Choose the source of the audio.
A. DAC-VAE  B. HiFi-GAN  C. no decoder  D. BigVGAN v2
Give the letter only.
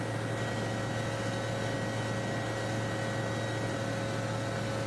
C